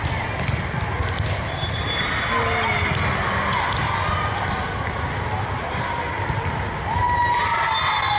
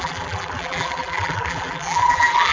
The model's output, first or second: second